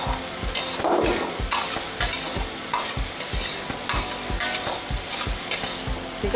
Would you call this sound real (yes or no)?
yes